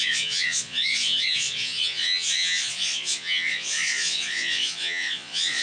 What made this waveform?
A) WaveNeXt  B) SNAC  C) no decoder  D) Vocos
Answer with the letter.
D